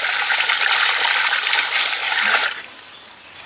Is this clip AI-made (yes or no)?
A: yes